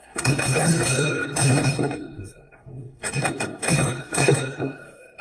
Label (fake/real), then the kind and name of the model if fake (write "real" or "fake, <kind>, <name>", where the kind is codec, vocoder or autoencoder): fake, codec, SNAC